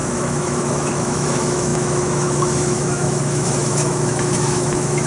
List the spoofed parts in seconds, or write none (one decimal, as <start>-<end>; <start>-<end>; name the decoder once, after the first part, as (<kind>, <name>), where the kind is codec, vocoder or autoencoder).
0.0-5.1 (autoencoder, DAC-VAE)